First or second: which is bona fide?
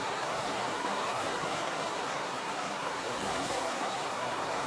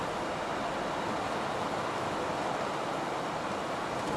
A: second